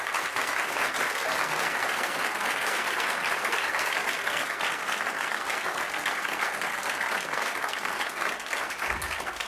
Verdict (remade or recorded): remade